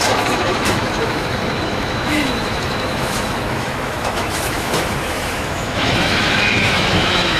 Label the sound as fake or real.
fake